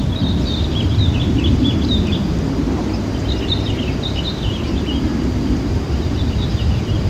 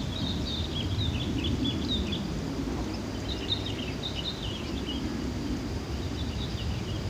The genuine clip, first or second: second